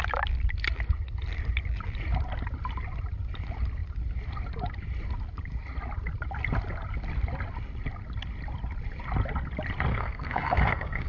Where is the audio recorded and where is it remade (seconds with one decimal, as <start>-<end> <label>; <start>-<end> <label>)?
0.0-9.9 recorded; 9.9-11.1 remade